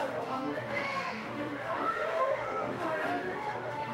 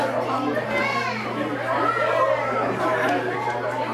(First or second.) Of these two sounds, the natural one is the second